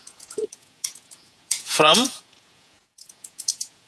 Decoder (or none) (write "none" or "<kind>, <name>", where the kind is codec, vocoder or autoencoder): vocoder, Vocos